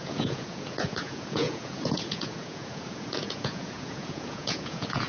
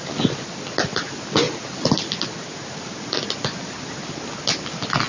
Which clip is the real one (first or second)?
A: second